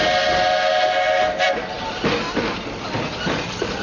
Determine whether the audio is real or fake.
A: real